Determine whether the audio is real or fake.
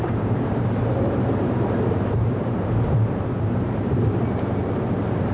fake